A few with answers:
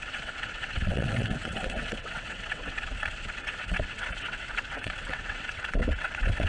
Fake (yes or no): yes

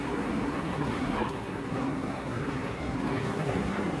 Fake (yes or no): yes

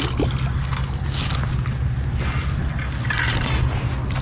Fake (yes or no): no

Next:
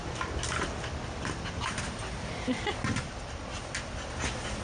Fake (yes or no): no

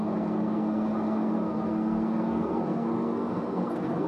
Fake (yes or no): yes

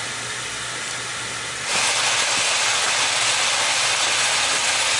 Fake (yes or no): no